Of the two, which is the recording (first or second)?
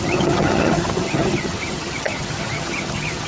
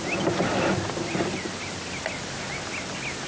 second